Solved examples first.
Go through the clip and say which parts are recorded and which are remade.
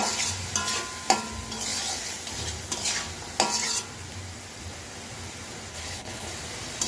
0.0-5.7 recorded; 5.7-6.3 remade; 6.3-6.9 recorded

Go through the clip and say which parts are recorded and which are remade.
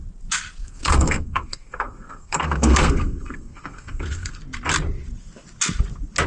0.0-0.6 recorded; 0.6-4.4 remade; 4.4-6.3 recorded